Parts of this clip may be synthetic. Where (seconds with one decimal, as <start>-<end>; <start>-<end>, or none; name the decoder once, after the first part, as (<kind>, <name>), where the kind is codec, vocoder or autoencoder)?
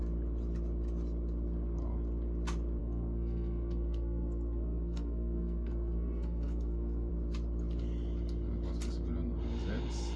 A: 2.8-7.1 (codec, SNAC)